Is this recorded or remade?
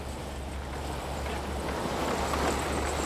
recorded